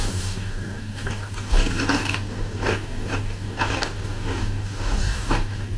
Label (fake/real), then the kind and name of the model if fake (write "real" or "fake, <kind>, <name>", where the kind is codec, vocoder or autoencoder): fake, codec, DAC